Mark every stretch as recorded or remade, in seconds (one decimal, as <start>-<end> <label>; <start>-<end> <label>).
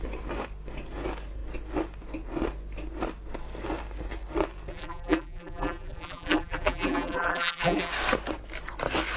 0.0-4.7 recorded; 4.7-7.9 remade; 7.9-9.2 recorded